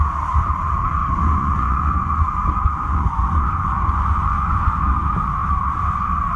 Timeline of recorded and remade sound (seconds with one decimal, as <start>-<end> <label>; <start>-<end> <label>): 0.0-1.0 recorded; 1.0-4.8 remade; 4.8-6.4 recorded